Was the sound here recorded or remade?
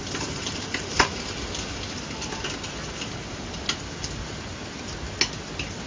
recorded